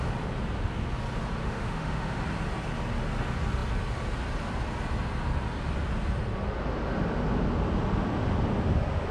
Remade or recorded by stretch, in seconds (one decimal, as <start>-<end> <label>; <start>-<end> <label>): 0.0-1.4 recorded; 1.4-2.2 remade; 2.2-9.1 recorded